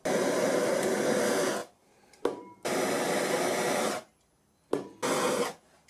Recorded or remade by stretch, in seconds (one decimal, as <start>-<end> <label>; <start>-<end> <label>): 0.0-5.9 recorded